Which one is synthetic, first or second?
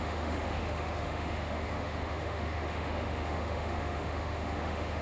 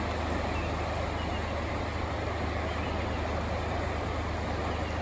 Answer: first